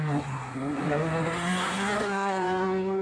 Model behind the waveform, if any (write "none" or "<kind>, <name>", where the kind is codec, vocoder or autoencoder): codec, SNAC